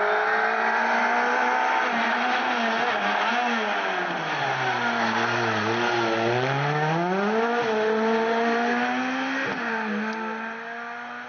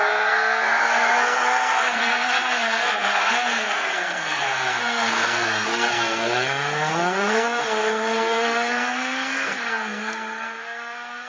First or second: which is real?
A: first